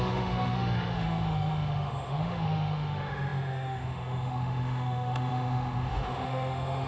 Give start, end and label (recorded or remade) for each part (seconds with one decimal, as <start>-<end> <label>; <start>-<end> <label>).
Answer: 0.0-6.9 remade